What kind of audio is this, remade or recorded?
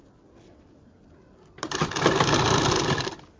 recorded